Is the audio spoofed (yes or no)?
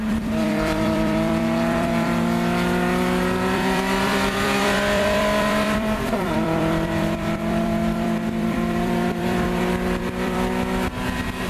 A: yes